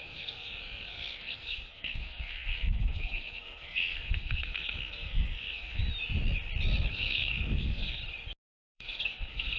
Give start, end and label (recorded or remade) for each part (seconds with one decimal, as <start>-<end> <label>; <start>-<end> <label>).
0.0-5.8 remade; 5.8-6.9 recorded; 6.9-8.0 remade; 8.0-8.7 recorded; 8.7-9.6 remade